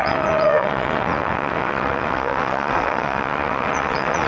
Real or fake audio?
fake